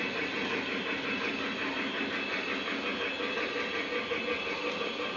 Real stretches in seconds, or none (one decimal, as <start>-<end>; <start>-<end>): 0.0-5.2

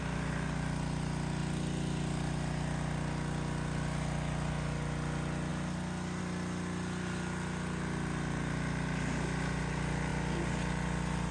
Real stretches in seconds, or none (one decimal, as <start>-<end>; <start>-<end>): 0.0-11.3

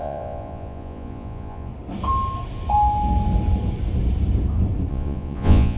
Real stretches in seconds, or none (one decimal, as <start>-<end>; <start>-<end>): 1.7-4.9

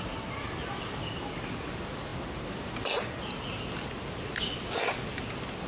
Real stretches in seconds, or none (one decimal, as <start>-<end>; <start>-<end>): 0.0-5.7